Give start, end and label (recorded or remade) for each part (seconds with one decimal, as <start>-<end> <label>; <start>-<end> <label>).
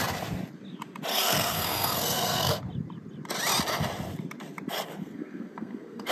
0.0-1.1 recorded; 1.1-2.6 remade; 2.6-4.9 recorded; 4.9-6.1 remade